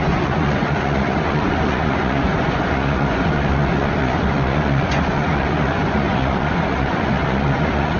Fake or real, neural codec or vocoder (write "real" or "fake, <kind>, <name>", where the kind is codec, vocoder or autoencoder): fake, vocoder, Vocos